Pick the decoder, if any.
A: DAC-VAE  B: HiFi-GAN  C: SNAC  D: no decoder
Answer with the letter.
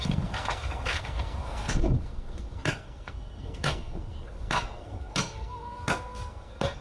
C